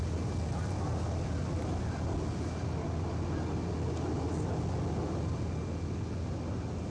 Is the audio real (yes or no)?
yes